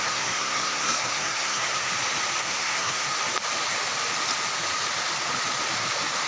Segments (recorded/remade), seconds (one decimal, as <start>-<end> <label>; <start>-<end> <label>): 0.0-1.9 remade; 1.9-2.4 recorded; 2.4-3.2 remade; 3.2-6.3 recorded

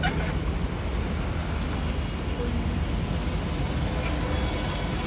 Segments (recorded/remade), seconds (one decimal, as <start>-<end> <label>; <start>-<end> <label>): 0.0-5.1 recorded

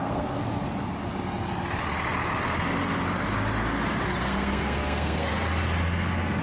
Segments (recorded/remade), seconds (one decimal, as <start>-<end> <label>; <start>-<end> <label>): 0.0-0.4 remade; 0.4-4.2 recorded; 4.2-5.3 remade; 5.3-6.4 recorded

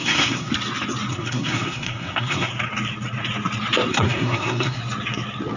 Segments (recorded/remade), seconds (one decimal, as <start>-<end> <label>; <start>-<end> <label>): 0.0-0.5 remade; 0.5-1.1 recorded; 1.1-2.5 remade; 2.5-3.9 recorded; 3.9-4.8 remade; 4.8-5.6 recorded

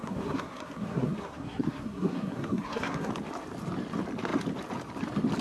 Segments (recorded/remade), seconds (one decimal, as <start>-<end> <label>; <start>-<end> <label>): 0.0-3.1 remade; 3.1-5.4 recorded

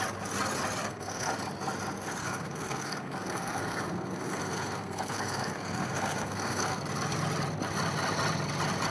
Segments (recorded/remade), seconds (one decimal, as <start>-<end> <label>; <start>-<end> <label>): 0.0-0.8 recorded; 0.8-1.3 remade; 1.3-2.2 recorded; 2.2-6.8 remade; 6.8-8.9 recorded

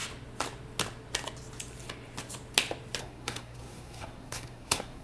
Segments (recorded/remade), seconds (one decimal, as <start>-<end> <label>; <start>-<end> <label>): 0.0-3.0 recorded; 3.0-5.0 remade